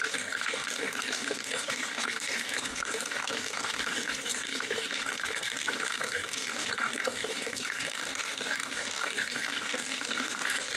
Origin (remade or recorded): remade